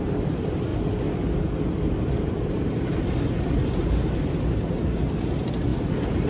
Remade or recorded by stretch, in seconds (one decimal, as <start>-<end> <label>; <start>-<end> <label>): 0.0-0.7 remade; 0.7-2.2 recorded; 2.2-5.7 remade; 5.7-6.3 recorded